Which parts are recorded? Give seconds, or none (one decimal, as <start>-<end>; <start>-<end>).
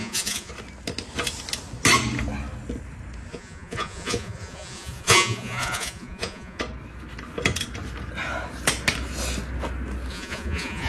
0.5-3.3; 6.6-10.1